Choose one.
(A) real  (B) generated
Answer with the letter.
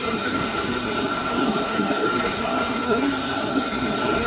B